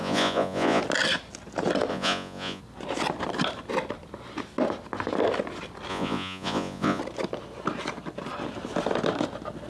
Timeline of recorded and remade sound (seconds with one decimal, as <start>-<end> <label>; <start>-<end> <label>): 0.0-0.8 remade; 0.8-1.9 recorded; 1.9-2.6 remade; 2.6-5.9 recorded; 5.9-7.0 remade; 7.0-9.7 recorded